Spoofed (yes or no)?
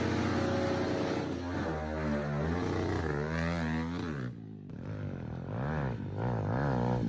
no